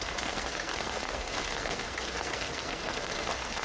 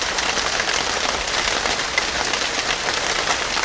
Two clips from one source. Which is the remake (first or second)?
first